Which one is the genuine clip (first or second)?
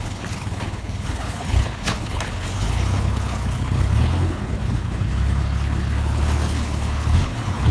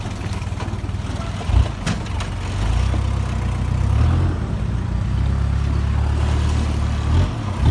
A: second